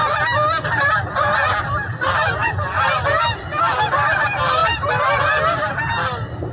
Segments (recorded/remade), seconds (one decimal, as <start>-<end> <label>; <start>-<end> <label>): 0.0-4.6 recorded; 4.6-5.2 remade; 5.2-6.5 recorded